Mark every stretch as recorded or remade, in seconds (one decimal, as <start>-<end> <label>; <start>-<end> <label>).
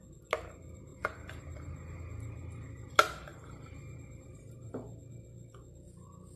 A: 0.0-0.9 recorded; 0.9-2.0 remade; 2.0-2.4 recorded; 2.4-2.9 remade; 2.9-3.3 recorded; 3.3-4.7 remade; 4.7-6.4 recorded